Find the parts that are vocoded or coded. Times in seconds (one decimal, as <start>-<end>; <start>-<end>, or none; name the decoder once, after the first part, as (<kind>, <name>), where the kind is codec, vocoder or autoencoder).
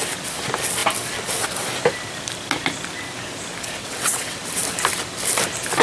3.8-4.4 (vocoder, WaveNeXt)